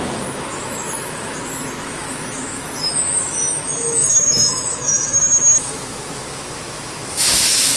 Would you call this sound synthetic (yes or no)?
yes